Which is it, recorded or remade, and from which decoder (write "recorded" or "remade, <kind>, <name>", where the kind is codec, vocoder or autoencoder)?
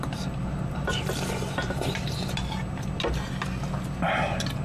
recorded